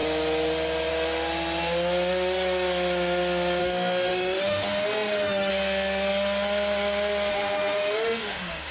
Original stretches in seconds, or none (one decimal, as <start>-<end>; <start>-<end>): 0.0-3.6; 5.5-7.3